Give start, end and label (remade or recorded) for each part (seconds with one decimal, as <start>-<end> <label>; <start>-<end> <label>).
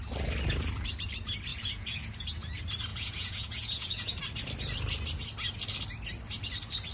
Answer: 0.0-1.5 recorded; 1.5-2.1 remade; 2.1-2.9 recorded; 2.9-4.2 remade; 4.2-6.9 recorded